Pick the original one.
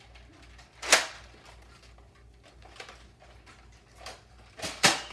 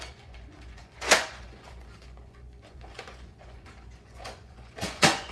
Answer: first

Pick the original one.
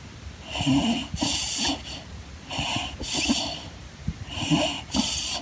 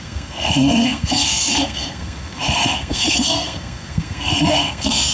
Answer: first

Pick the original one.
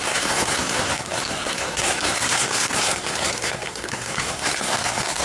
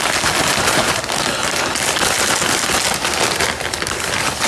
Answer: second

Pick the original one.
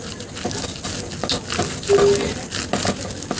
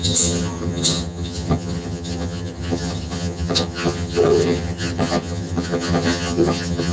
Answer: first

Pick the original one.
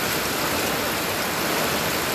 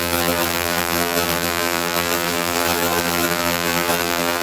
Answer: first